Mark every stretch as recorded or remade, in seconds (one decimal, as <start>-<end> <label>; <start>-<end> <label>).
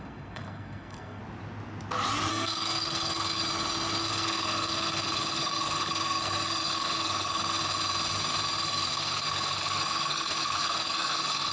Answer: 0.0-1.2 remade; 1.2-2.3 recorded; 2.3-3.4 remade; 3.4-4.0 recorded; 4.0-7.6 remade; 7.6-8.6 recorded; 8.6-11.5 remade